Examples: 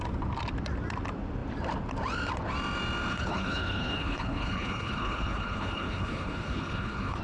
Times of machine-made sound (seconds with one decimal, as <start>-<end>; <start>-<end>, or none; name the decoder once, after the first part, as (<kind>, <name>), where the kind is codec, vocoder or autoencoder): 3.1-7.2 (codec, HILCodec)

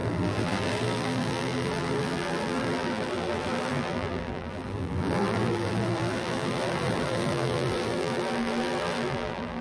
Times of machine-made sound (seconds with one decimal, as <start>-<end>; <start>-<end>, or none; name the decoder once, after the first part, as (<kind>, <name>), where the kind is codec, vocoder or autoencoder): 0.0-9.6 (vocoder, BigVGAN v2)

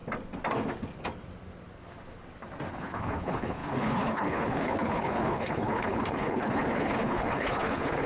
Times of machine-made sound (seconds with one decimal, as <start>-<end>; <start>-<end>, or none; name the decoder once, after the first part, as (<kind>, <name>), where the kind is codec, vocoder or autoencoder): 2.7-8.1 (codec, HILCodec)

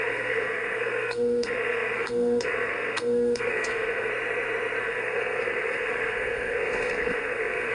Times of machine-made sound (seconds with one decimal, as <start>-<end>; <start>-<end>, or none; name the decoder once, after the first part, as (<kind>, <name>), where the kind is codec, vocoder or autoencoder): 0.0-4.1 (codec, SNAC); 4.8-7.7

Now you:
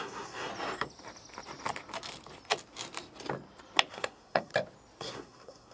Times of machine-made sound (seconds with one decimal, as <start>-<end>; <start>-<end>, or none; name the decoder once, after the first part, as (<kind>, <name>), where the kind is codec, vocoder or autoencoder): 0.0-0.5 (codec, SNAC); 3.9-4.5; 5.0-5.7

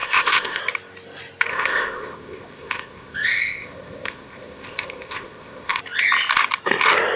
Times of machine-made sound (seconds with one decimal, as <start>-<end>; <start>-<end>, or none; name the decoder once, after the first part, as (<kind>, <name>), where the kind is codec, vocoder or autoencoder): 0.0-0.6 (codec, ZipCodec); 1.5-5.8

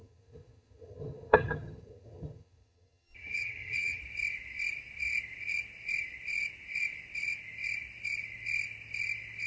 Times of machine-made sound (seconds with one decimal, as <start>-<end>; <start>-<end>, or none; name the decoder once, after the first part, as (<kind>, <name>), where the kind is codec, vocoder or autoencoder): 0.0-4.0 (vocoder, HiFi-GAN)

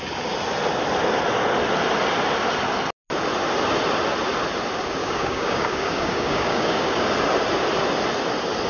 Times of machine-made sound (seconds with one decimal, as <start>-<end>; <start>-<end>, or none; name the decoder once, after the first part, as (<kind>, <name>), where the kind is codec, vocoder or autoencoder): 5.0-7.0 (codec, DAC)